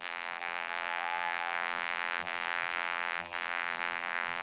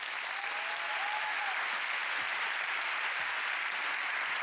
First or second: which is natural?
second